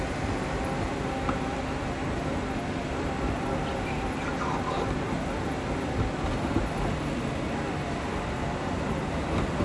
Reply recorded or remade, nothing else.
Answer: recorded